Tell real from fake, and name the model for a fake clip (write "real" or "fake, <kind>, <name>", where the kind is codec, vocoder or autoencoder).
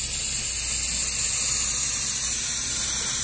real